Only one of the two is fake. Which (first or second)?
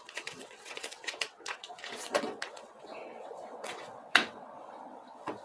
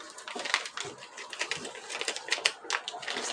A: first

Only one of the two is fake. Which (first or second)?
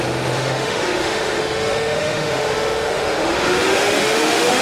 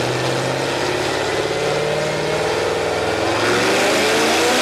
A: first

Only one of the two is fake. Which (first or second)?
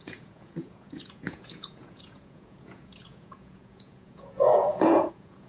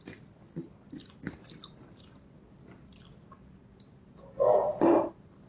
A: first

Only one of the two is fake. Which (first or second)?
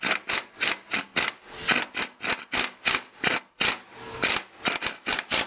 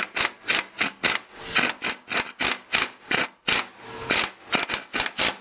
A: first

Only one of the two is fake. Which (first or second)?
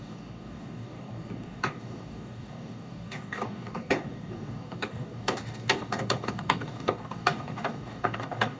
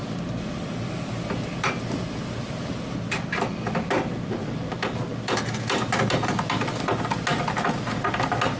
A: first